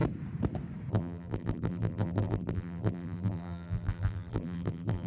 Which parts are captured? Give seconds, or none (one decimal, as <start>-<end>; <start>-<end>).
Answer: 0.0-0.9